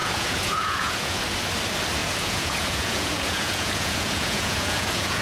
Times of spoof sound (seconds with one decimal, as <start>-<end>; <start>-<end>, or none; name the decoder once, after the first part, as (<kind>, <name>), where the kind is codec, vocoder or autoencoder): 0.0-1.2 (vocoder, Vocos); 2.0-5.2